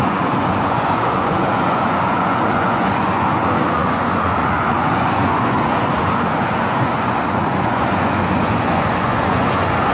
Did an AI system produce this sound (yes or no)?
yes